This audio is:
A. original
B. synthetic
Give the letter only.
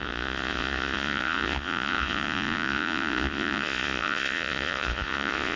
B